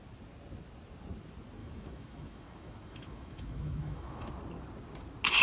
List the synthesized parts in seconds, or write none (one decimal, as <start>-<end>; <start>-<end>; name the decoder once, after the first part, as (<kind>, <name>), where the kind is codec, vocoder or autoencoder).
1.6-4.3 (autoencoder, DAC-VAE)